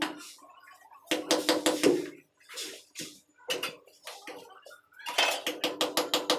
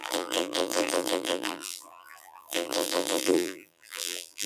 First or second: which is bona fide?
first